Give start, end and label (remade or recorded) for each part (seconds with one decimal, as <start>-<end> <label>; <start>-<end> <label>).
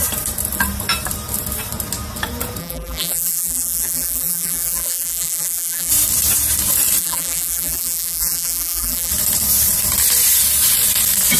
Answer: 0.0-2.6 recorded; 2.6-5.9 remade; 5.9-7.0 recorded; 7.0-9.1 remade; 9.1-11.4 recorded